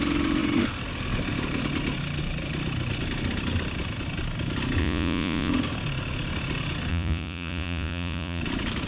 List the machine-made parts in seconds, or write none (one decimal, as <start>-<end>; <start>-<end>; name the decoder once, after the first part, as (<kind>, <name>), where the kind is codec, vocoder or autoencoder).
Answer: 4.8-5.5 (vocoder, Vocos); 6.9-8.4